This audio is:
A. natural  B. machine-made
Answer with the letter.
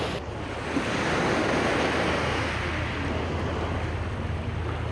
A